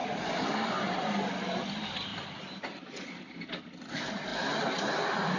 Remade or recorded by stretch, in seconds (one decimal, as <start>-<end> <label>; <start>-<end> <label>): 0.0-0.9 remade; 0.9-2.1 recorded; 2.1-2.7 remade; 2.7-5.4 recorded